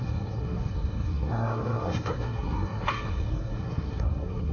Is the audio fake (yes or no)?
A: yes